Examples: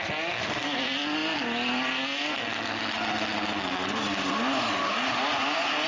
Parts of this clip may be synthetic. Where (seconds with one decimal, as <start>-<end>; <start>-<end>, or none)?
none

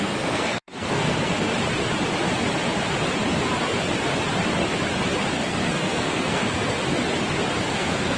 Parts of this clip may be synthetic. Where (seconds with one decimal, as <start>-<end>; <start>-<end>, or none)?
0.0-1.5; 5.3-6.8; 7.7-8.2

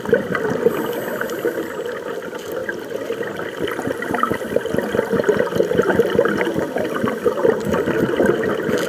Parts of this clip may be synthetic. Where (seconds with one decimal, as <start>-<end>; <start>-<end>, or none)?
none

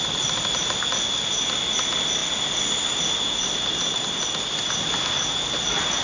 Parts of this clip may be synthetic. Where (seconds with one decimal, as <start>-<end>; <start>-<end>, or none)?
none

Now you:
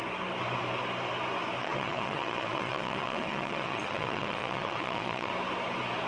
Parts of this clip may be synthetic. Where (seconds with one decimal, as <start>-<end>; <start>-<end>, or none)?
1.6-5.3

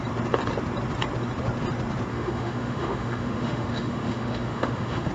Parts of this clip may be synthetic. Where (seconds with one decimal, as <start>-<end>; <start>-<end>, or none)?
2.1-5.1

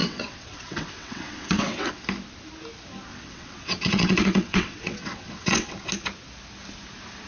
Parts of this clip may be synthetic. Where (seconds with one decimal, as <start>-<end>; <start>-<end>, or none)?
0.0-1.9; 3.1-5.7

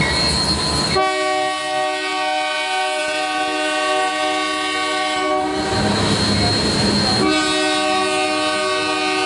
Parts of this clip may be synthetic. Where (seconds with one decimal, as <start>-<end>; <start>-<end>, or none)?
none